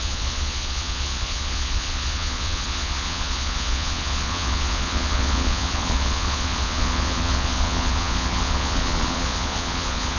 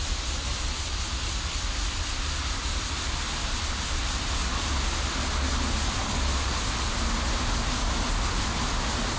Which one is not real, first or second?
first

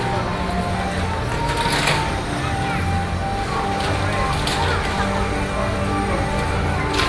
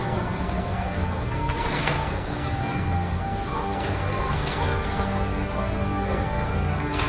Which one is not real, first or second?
second